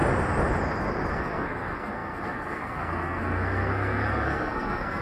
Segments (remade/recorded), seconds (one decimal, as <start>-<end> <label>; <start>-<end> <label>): 0.0-1.1 recorded; 1.1-5.0 remade